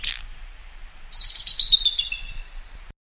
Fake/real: real